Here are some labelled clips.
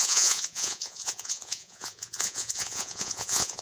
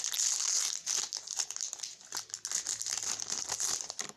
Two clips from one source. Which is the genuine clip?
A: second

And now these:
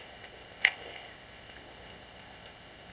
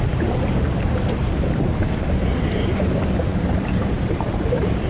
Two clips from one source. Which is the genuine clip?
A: second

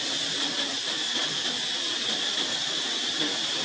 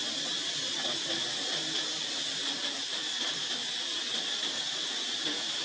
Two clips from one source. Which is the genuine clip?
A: second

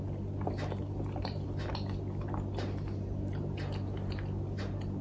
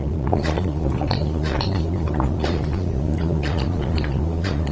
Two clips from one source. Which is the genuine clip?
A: first